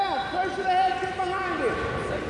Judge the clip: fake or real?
real